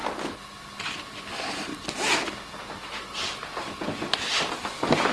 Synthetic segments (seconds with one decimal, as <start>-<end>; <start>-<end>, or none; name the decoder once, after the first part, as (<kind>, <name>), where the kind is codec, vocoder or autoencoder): none